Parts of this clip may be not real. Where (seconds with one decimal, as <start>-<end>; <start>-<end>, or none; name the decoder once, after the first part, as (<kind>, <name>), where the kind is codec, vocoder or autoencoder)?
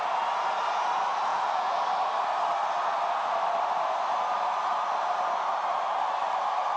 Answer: 1.3-1.8 (vocoder, Vocos)